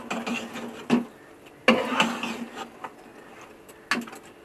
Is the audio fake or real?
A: real